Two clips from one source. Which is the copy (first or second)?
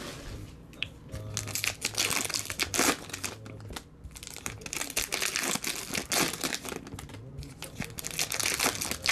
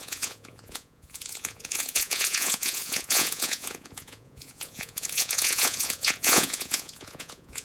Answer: second